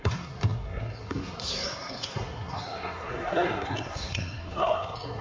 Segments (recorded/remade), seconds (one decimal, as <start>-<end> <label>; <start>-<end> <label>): 0.0-5.2 remade